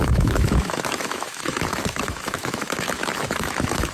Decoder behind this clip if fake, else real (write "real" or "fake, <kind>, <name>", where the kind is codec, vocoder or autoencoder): fake, autoencoder, DAC-VAE